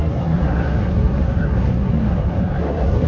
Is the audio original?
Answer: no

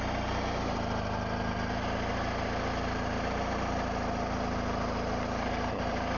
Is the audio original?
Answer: yes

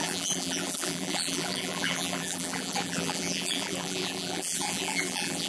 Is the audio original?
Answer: no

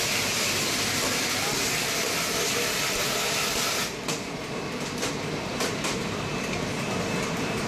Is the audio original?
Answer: yes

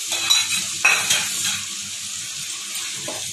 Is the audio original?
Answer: yes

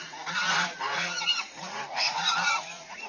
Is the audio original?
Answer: no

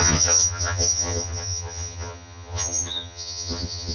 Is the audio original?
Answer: no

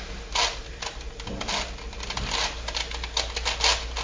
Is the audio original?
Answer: yes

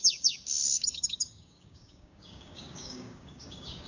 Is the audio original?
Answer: no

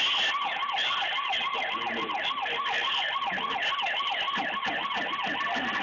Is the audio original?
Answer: yes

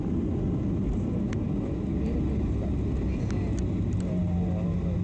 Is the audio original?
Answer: yes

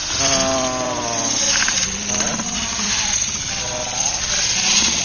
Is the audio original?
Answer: yes